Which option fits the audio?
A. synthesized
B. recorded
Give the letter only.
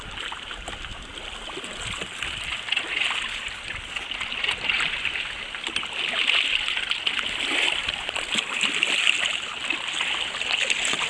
B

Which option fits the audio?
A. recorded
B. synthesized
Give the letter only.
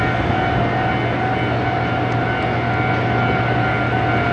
A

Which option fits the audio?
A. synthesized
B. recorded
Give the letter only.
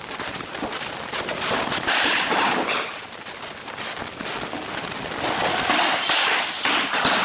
B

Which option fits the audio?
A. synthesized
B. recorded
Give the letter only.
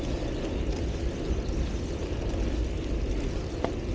B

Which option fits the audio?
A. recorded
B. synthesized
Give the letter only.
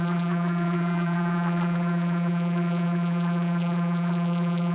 B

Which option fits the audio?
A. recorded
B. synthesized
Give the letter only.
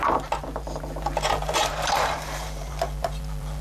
B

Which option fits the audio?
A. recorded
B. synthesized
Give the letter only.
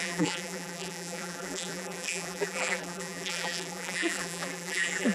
B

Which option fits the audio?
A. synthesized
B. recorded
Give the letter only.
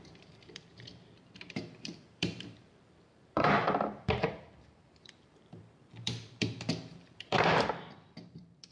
A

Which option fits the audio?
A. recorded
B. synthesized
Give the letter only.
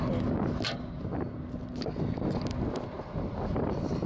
A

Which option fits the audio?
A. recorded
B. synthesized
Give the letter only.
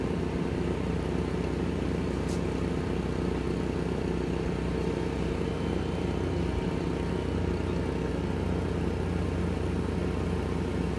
A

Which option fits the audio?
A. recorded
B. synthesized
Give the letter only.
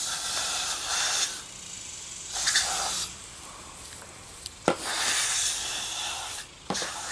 B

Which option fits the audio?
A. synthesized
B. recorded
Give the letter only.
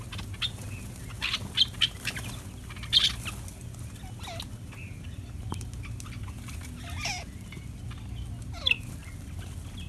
B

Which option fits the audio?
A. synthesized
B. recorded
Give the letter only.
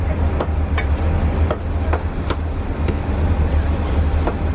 B